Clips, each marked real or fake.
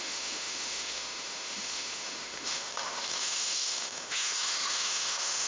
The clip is fake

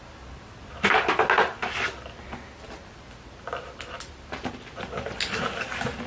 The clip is real